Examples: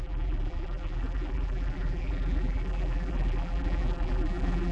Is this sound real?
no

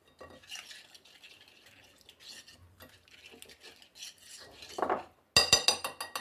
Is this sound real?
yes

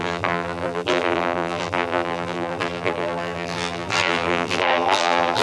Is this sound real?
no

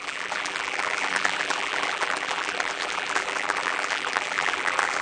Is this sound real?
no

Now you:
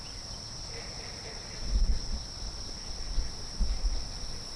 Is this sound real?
yes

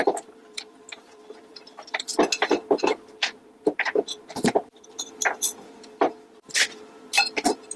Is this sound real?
no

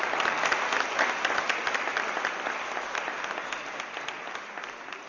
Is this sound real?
yes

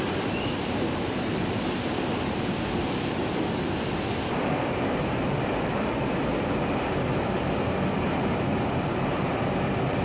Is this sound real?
no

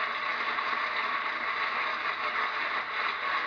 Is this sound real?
yes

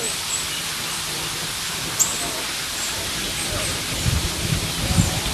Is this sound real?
yes